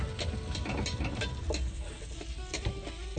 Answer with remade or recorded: recorded